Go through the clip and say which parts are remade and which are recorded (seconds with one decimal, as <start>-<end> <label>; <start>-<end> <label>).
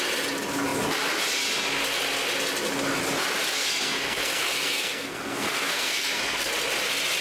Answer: 0.0-3.5 recorded; 3.5-6.5 remade; 6.5-7.2 recorded